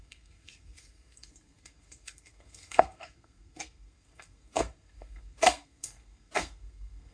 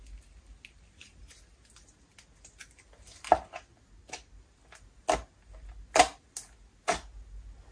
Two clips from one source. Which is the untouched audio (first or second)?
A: second